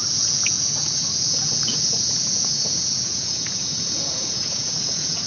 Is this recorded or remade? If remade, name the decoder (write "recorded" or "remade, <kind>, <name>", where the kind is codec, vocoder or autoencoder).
remade, vocoder, Vocos